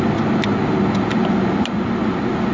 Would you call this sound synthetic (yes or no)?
no